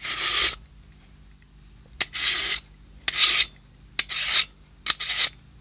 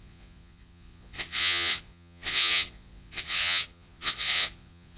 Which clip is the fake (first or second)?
second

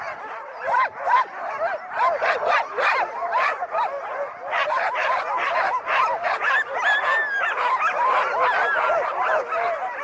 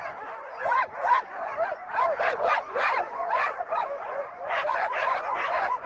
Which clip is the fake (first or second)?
second